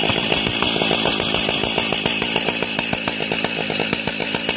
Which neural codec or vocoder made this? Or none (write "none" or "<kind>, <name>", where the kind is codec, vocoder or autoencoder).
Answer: none